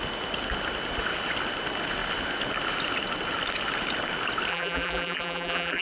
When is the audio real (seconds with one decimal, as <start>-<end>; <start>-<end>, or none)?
0.0-4.5